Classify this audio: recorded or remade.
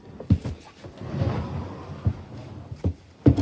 recorded